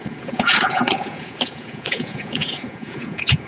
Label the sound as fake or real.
fake